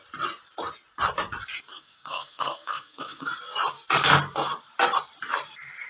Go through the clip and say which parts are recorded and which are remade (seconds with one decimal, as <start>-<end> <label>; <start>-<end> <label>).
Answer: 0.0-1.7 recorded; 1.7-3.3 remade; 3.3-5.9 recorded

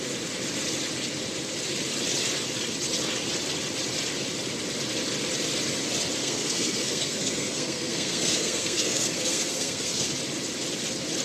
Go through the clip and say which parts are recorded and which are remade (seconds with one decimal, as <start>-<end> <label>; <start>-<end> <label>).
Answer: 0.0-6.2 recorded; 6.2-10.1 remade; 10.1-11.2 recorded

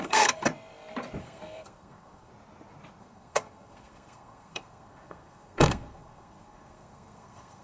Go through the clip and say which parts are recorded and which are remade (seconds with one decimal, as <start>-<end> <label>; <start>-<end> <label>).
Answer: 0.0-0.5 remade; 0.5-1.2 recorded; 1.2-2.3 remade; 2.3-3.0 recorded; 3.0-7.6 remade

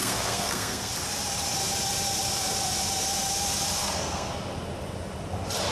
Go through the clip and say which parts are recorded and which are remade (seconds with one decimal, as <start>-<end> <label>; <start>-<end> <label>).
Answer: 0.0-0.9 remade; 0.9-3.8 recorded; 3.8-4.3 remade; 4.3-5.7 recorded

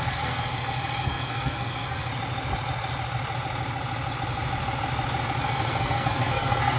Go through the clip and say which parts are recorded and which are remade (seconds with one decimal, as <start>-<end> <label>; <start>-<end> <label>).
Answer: 0.0-2.1 remade; 2.1-5.4 recorded; 5.4-6.8 remade

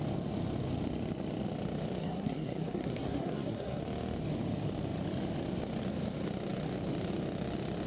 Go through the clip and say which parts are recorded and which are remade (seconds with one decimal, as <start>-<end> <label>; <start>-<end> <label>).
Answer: 0.0-2.0 recorded; 2.0-3.8 remade; 3.8-7.9 recorded

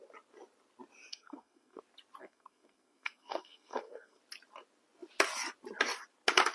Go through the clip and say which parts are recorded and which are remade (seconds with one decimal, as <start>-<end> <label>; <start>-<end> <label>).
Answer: 0.0-1.1 recorded; 1.1-1.8 remade; 1.8-2.2 recorded; 2.2-4.2 remade; 4.2-6.5 recorded

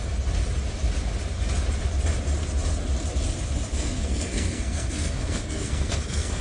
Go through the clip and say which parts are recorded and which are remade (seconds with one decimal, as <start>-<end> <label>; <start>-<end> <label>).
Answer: 0.0-3.7 recorded; 3.7-6.4 remade